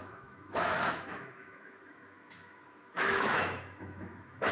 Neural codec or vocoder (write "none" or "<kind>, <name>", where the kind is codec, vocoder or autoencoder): autoencoder, DAC-VAE